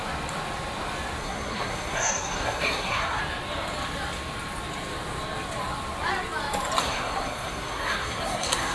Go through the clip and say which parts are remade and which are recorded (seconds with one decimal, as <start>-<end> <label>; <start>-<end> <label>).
0.0-1.2 recorded; 1.2-3.2 remade; 3.2-6.8 recorded; 6.8-8.7 remade